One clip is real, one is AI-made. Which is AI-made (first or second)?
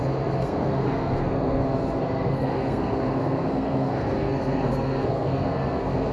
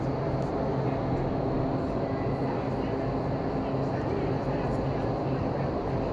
first